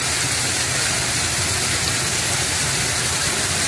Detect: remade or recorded recorded